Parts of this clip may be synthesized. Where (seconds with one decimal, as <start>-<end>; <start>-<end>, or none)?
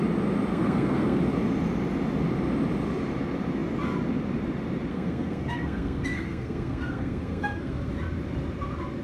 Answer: 0.5-1.2; 4.9-7.9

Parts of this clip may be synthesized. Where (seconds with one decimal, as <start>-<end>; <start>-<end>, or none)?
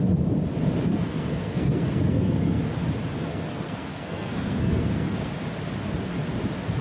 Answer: 0.9-2.6; 3.3-5.3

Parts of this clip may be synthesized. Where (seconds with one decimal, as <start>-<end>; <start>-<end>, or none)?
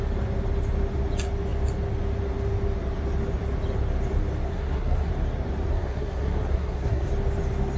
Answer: 4.5-5.1; 5.7-7.1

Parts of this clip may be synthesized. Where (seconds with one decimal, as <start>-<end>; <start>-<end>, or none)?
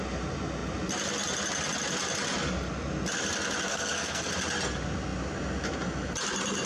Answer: 3.7-4.3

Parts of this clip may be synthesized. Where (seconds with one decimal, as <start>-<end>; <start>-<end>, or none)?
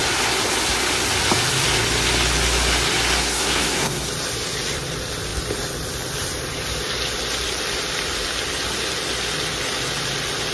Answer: 3.2-4.1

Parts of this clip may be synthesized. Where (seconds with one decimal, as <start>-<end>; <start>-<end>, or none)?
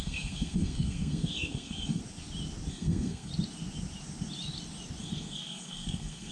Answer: 0.0-2.0; 2.7-3.3; 5.0-6.3